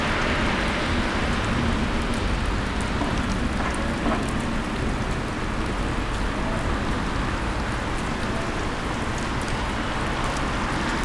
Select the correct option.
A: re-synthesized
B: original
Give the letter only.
B